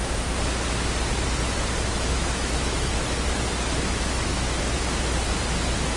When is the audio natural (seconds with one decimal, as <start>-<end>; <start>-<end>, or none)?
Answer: 0.0-1.9; 4.6-6.0